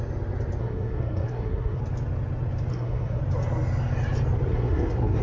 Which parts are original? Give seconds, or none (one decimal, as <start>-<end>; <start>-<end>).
0.0-0.6; 1.8-2.7; 3.2-4.5